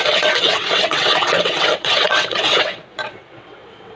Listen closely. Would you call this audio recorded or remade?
remade